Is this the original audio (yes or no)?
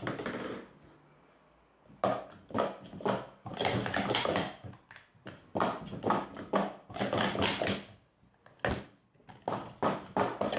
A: yes